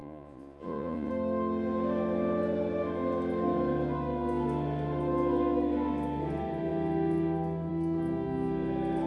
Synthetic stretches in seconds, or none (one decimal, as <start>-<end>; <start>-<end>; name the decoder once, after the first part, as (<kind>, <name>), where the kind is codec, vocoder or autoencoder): 0.0-1.1 (vocoder, Vocos)